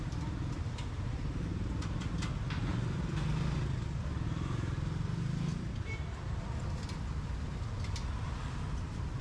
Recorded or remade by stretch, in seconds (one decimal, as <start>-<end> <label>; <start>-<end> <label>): 0.0-1.5 recorded; 1.5-2.1 remade; 2.1-2.7 recorded; 2.7-4.2 remade; 4.2-5.5 recorded; 5.5-9.2 remade